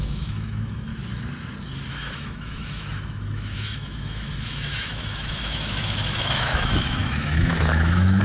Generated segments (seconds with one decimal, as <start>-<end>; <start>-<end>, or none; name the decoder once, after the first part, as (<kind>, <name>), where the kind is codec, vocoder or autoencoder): 0.0-0.9 (autoencoder, DAC-VAE); 1.9-8.2